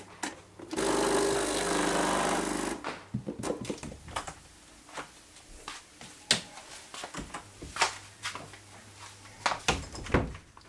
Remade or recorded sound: recorded